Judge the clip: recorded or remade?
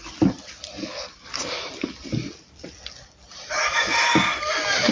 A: recorded